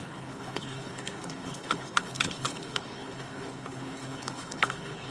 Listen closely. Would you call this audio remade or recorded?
remade